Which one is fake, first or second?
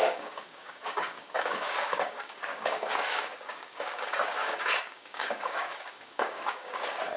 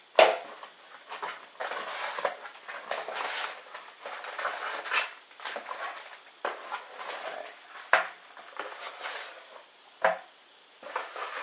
first